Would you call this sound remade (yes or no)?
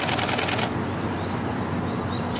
no